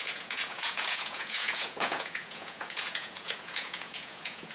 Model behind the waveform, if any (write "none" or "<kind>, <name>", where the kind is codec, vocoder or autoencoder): vocoder, Vocos